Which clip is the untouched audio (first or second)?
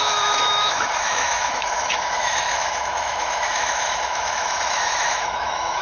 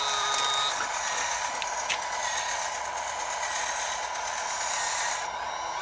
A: second